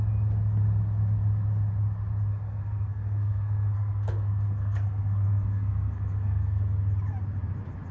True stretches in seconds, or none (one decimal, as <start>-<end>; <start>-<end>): 0.0-2.3; 6.6-7.9